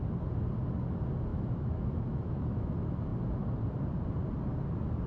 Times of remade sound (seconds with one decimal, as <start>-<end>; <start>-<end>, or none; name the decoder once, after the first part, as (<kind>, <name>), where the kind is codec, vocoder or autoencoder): 1.3-2.7 (autoencoder, DAC-VAE)